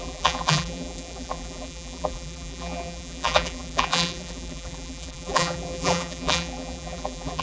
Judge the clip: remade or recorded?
remade